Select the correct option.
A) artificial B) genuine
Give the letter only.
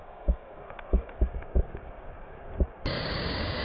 A